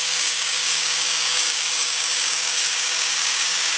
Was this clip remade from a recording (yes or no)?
yes